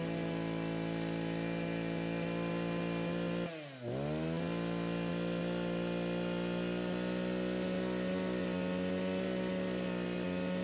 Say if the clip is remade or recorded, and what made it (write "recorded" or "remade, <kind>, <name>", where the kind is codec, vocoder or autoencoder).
recorded